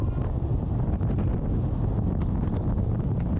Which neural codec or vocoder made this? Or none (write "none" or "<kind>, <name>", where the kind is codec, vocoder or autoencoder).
none